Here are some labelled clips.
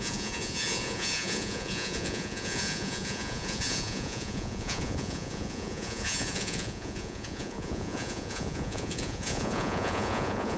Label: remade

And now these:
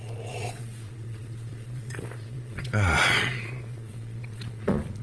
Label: remade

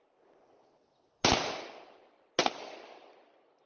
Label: recorded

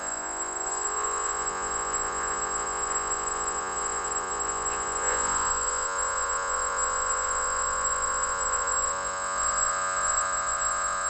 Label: remade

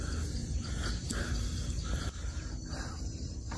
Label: recorded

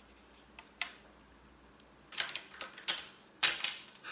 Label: recorded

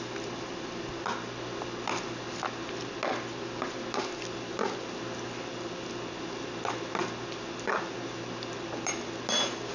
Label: recorded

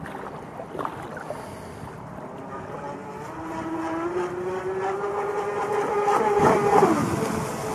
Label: recorded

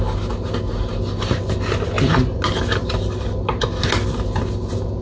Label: recorded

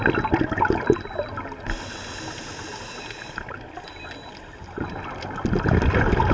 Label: recorded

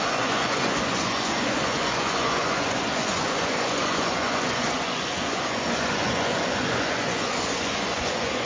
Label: remade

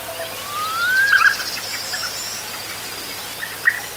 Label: recorded